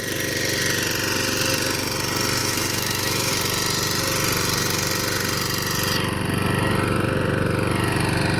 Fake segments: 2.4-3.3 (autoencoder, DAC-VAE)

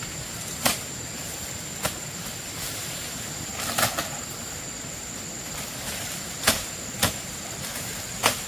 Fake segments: 0.0-1.2 (vocoder, BigVGAN v2); 2.2-3.5; 4.3-8.5

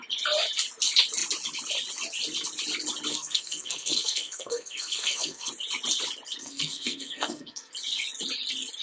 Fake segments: 3.1-5.5 (codec, SNAC); 6.4-7.7

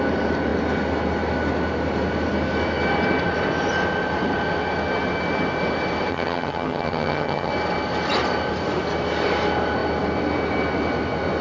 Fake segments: 6.1-7.5 (vocoder, HiFi-GAN)

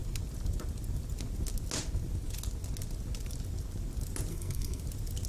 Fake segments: 4.3-4.8 (codec, SNAC)

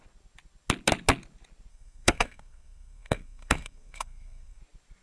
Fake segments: 1.7-4.6 (codec, SNAC)